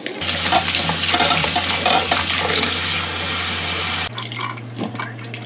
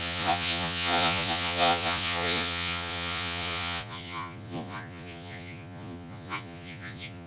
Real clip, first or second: first